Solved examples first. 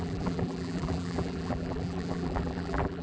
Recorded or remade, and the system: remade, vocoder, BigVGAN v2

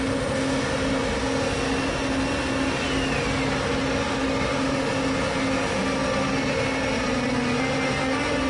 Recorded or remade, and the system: recorded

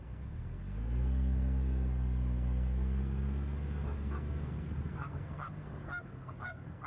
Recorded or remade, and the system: remade, codec, SNAC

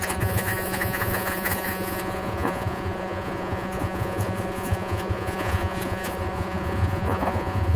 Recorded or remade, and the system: remade, vocoder, Vocos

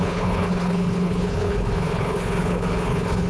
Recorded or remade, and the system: remade, codec, HILCodec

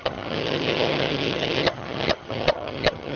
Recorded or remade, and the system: remade, vocoder, HiFi-GAN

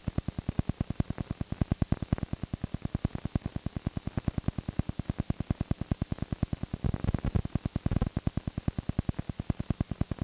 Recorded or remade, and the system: recorded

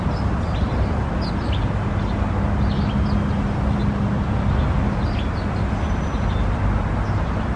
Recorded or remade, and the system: recorded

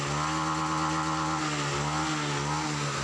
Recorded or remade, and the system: recorded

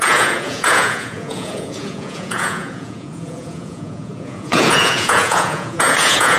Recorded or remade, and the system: remade, vocoder, Vocos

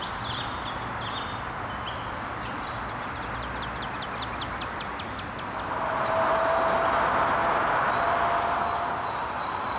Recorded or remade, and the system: recorded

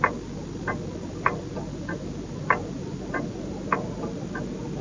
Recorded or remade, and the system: recorded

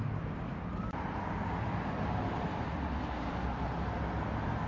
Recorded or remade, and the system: recorded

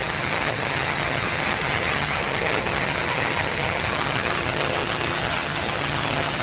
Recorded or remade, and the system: remade, vocoder, HiFi-GAN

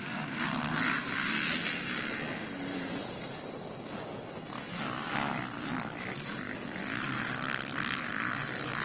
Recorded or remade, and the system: recorded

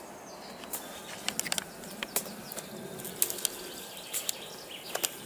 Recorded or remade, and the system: recorded